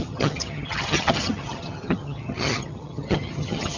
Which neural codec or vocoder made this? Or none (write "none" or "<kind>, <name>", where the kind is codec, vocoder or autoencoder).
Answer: vocoder, HiFi-GAN